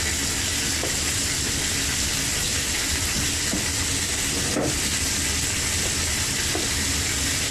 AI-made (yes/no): no